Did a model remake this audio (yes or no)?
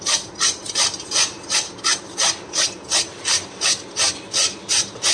no